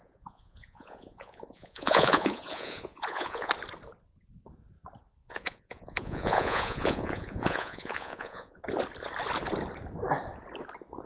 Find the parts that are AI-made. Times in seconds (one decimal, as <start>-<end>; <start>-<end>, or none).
0.0-3.5; 5.2-8.6